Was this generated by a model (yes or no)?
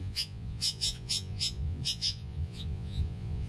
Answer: yes